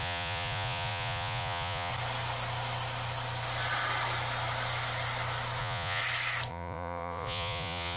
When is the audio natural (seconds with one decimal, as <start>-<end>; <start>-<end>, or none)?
1.9-5.6; 6.0-6.5